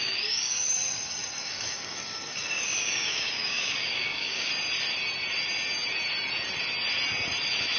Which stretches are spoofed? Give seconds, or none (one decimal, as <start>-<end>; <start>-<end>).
0.0-4.5